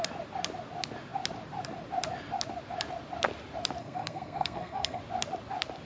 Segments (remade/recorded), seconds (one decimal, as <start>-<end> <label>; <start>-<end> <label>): 0.0-3.8 recorded; 3.8-5.0 remade; 5.0-5.9 recorded